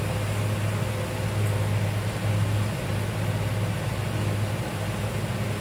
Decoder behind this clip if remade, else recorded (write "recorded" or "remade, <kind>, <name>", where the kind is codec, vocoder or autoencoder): recorded